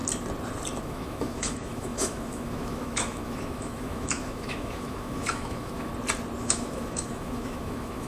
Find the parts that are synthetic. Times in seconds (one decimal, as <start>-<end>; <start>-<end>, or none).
0.8-5.9; 6.4-8.1